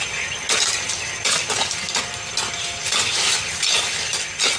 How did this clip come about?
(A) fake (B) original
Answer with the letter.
B